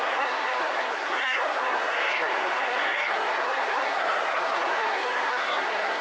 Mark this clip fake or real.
fake